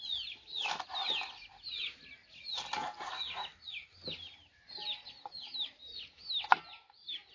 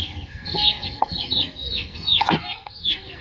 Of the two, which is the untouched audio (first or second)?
first